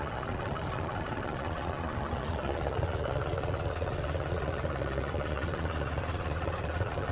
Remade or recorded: remade